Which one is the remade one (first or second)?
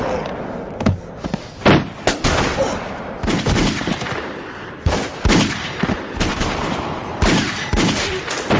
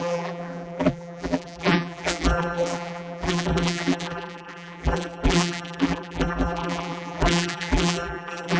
second